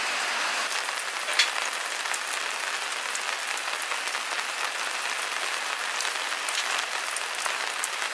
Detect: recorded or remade recorded